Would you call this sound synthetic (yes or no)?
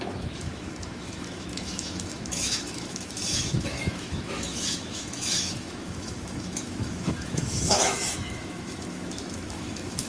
yes